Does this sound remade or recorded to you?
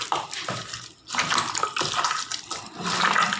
recorded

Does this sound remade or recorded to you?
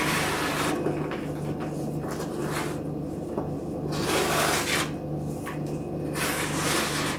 recorded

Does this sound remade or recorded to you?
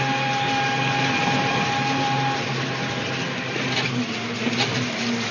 recorded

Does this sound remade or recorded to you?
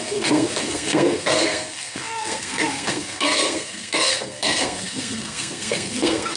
remade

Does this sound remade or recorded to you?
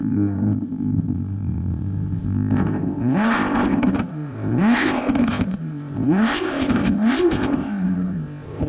remade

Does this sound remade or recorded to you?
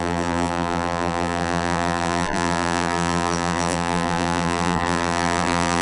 remade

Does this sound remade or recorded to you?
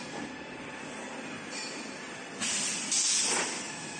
recorded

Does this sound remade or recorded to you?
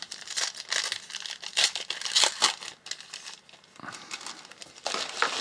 recorded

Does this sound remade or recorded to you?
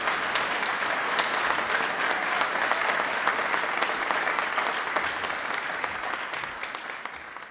recorded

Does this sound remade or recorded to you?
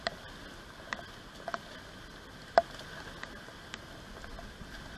recorded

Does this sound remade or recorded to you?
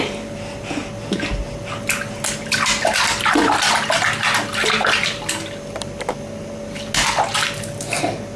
recorded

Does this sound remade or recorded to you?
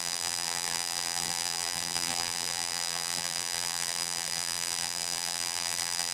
remade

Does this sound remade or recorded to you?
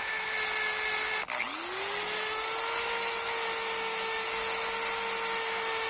recorded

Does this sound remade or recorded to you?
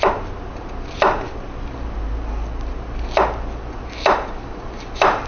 recorded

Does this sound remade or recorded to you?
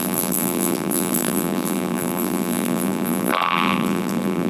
remade